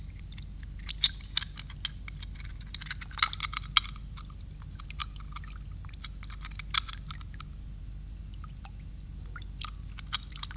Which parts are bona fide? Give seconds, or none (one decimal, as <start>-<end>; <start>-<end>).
0.0-10.6